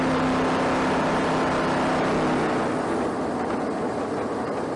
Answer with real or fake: real